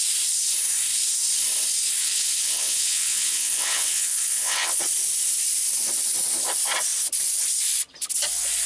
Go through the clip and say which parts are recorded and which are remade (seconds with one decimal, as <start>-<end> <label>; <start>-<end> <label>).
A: 0.0-2.0 recorded; 2.0-4.8 remade; 4.8-8.7 recorded